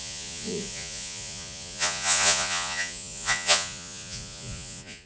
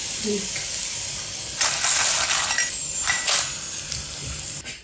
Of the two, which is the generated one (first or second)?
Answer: first